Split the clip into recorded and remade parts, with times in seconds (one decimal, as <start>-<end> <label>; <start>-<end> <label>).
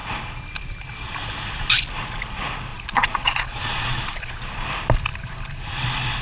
0.0-2.7 recorded; 2.7-4.5 remade; 4.5-6.2 recorded